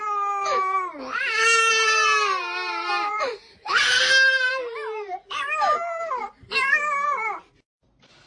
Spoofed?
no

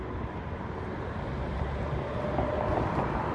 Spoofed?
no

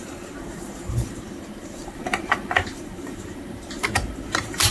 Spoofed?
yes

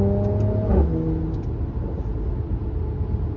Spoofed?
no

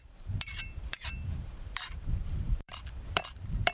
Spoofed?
yes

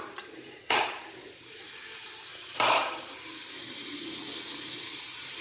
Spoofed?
yes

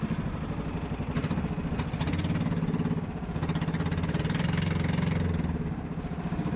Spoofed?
no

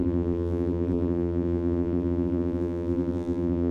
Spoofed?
yes